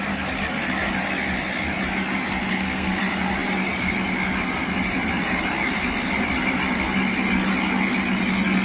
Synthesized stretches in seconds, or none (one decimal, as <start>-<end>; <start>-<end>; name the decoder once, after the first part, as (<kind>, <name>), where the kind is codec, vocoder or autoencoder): 2.5-3.0 (codec, SNAC)